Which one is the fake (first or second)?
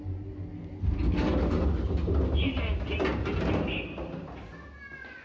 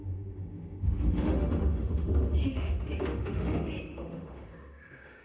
second